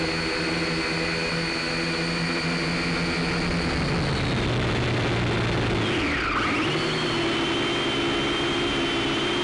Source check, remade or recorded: recorded